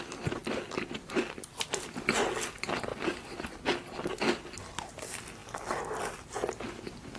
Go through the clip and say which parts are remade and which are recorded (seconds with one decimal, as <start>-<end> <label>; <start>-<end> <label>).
0.0-7.2 recorded